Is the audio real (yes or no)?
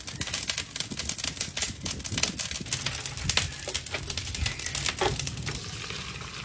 yes